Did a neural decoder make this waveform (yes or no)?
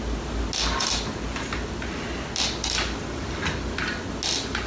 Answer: no